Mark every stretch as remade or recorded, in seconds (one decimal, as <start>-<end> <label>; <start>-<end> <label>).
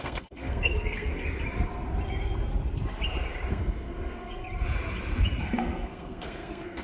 0.0-1.1 remade; 1.1-3.5 recorded; 3.5-4.4 remade; 4.4-5.4 recorded; 5.4-6.8 remade